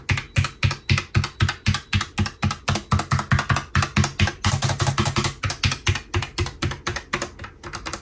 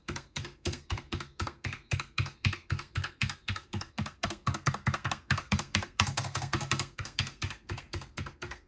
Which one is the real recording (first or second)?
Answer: first